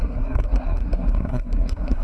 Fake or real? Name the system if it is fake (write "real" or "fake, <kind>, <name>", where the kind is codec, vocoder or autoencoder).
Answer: fake, codec, SNAC